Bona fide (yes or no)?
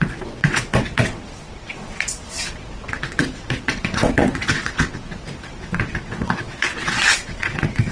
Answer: no